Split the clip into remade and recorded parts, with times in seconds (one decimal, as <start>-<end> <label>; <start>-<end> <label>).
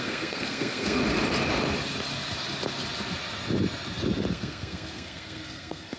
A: 0.0-1.0 remade; 1.0-4.3 recorded; 4.3-6.0 remade